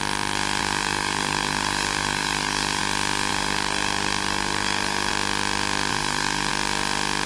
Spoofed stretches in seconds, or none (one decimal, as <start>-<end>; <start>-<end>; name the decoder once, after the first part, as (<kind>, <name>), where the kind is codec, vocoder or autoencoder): 0.6-2.8 (codec, DAC); 3.3-5.1; 5.9-6.5